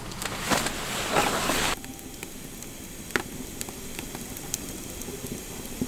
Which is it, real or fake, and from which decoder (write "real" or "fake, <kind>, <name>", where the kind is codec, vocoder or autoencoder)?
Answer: real